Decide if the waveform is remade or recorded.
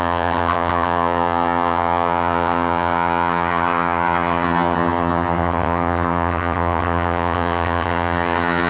remade